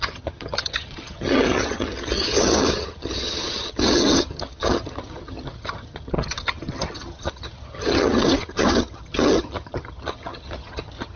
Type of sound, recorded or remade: remade